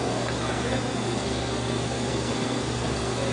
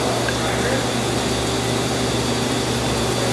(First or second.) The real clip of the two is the second